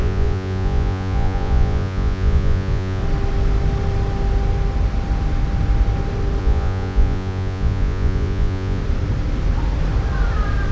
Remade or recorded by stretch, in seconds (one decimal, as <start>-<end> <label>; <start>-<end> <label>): 0.0-3.0 remade; 3.0-6.4 recorded; 6.4-8.8 remade; 8.8-10.7 recorded